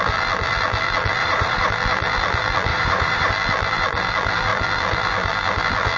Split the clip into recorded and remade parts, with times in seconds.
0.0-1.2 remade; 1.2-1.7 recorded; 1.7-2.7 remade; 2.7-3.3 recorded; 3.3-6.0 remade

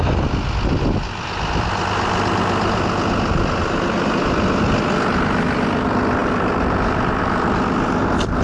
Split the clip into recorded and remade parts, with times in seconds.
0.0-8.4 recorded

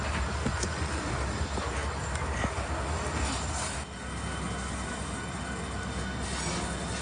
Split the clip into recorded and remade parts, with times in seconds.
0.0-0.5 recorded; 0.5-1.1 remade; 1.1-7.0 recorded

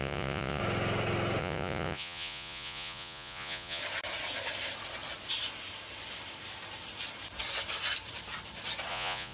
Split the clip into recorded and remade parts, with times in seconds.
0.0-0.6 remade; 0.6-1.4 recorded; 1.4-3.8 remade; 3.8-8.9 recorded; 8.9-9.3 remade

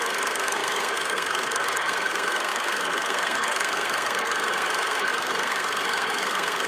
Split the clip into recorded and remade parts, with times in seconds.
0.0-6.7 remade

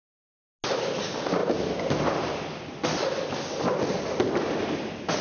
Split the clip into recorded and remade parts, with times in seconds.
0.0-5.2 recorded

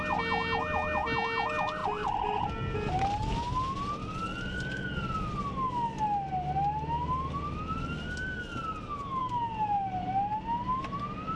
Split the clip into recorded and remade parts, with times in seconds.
0.0-11.4 recorded

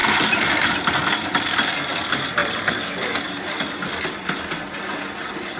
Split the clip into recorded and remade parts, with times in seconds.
0.0-0.9 remade; 0.9-2.4 recorded; 2.4-3.9 remade; 3.9-5.6 recorded